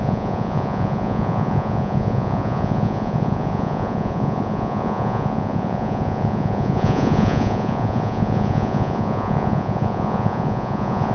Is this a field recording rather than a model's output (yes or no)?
no